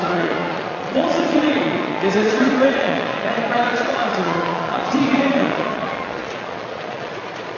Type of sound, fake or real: fake